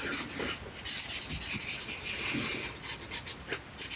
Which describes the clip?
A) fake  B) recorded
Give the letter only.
B